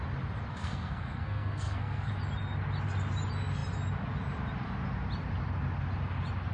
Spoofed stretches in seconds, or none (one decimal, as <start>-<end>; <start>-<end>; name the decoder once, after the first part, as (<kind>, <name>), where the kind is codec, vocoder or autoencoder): 0.5-2.1 (codec, SNAC)